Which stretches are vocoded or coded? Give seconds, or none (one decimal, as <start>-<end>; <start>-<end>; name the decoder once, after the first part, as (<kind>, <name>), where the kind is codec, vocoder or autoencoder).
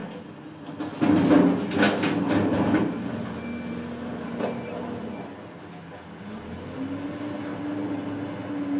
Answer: none